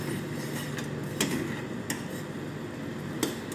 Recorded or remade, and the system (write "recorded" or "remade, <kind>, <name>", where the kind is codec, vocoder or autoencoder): recorded